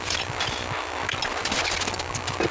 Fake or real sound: real